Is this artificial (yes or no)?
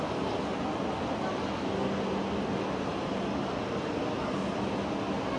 no